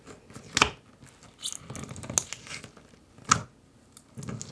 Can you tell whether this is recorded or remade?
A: recorded